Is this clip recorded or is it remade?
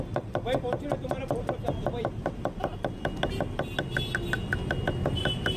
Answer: recorded